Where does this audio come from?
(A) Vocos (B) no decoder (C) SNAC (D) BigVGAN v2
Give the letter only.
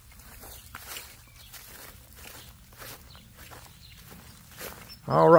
B